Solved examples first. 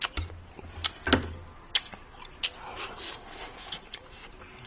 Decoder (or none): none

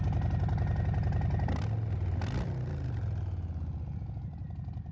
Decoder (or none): none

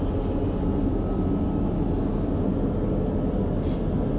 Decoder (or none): none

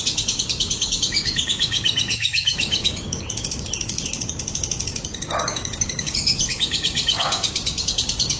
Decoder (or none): codec, DAC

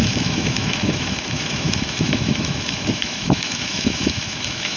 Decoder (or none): autoencoder, DAC-VAE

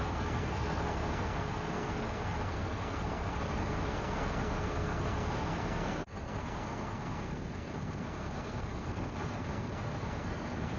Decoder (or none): codec, SNAC